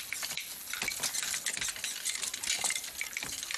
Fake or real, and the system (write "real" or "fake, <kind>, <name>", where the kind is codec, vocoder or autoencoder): real